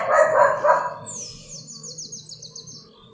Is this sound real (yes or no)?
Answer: yes